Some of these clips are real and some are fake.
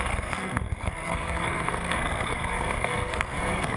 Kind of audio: fake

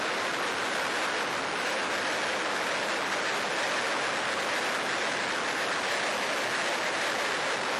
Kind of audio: real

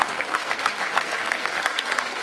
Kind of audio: fake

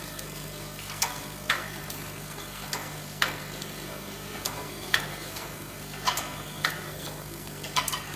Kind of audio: fake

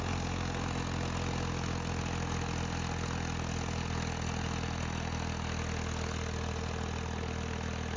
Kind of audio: real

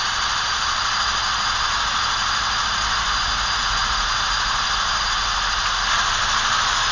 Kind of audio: real